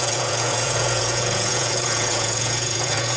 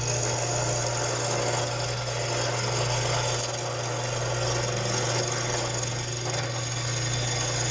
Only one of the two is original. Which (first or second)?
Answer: second